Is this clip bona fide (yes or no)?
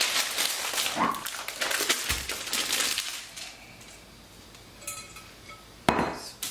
yes